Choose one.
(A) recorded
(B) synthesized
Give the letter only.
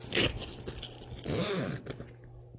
A